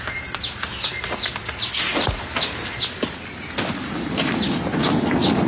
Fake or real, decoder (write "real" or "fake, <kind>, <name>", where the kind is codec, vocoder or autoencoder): real